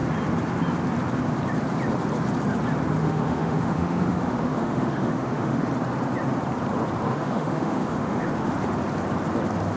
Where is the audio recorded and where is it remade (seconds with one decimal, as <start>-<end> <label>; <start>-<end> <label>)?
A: 0.0-3.0 recorded; 3.0-5.7 remade; 5.7-7.1 recorded; 7.1-8.5 remade; 8.5-9.8 recorded